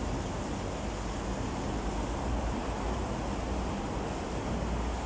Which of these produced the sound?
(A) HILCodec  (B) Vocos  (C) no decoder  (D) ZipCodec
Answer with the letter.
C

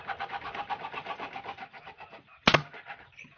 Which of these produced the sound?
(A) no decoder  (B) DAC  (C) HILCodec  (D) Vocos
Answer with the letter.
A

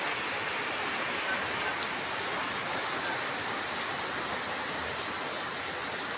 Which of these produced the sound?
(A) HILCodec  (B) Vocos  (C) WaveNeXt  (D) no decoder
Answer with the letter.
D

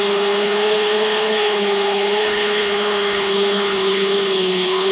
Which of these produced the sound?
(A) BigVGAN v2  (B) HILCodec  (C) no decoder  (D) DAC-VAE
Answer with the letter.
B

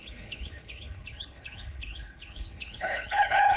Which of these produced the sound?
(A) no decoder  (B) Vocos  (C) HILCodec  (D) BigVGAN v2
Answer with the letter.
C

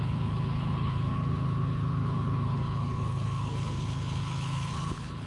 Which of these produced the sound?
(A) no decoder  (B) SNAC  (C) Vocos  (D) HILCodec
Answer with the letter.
D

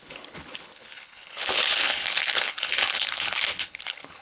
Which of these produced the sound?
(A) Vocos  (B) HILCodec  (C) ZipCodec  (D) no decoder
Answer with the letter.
B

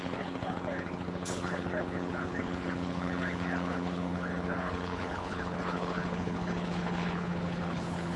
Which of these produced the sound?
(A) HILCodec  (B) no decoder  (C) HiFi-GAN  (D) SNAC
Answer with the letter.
A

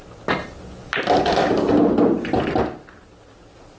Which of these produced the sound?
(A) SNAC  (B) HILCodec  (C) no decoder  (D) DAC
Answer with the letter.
C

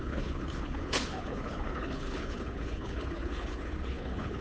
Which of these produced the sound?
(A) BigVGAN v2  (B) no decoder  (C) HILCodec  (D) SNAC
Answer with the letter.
C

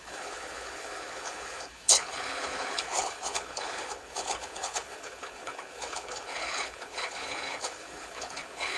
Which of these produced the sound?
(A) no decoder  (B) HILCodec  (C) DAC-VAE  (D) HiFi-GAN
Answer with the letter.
B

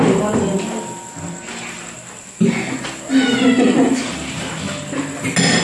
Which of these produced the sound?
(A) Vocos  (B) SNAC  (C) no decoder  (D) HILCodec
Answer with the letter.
C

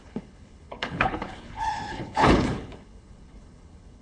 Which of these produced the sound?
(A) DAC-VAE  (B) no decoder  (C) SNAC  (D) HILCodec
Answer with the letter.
D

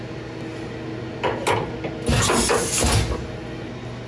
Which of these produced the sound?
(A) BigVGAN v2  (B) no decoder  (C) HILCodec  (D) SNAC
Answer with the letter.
B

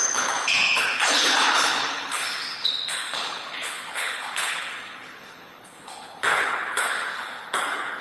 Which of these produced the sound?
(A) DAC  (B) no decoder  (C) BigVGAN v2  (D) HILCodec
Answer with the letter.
D